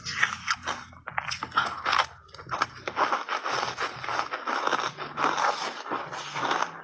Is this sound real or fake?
real